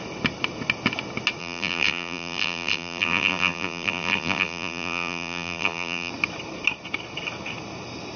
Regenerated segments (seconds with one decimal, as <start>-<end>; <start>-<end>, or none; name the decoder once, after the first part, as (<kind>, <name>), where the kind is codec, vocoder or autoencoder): 1.4-6.1 (vocoder, BigVGAN v2)